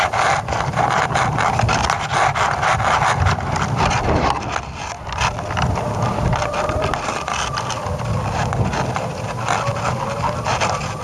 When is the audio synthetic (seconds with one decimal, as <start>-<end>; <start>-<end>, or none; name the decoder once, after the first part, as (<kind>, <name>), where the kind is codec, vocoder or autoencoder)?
none